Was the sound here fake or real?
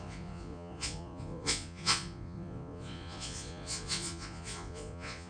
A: fake